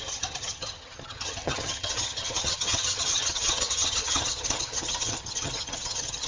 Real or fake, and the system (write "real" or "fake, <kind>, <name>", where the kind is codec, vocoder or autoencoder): fake, vocoder, HiFi-GAN